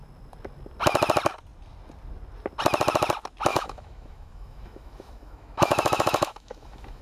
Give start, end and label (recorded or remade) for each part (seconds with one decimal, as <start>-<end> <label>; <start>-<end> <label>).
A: 0.0-3.5 recorded; 3.5-7.0 remade